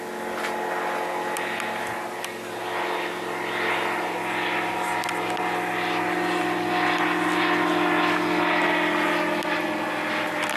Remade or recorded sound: recorded